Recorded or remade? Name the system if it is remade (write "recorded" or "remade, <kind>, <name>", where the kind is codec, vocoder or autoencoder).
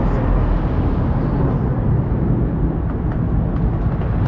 recorded